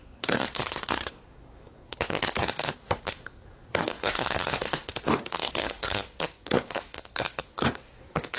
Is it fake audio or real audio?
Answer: fake